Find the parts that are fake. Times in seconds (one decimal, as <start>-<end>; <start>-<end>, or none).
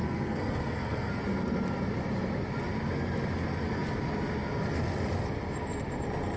0.0-1.2